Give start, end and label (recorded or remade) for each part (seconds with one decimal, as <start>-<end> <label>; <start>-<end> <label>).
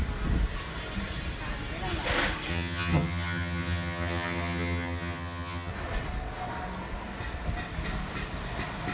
0.0-2.5 recorded; 2.5-5.7 remade; 5.7-8.9 recorded